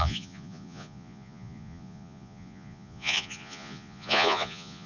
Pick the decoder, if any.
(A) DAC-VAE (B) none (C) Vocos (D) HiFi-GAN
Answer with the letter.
C